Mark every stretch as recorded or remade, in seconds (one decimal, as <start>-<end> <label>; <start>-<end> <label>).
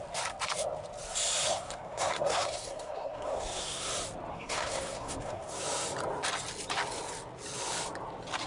0.0-1.5 recorded; 1.5-3.9 remade; 3.9-4.3 recorded; 4.3-5.6 remade; 5.6-8.5 recorded